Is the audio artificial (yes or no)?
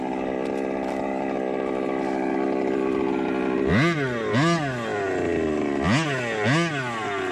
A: no